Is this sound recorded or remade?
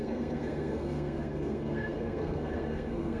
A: remade